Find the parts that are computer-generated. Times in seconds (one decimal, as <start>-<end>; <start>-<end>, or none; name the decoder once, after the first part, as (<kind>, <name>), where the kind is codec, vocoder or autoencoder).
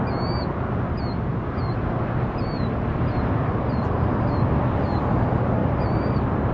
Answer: 5.6-6.5 (vocoder, BigVGAN v2)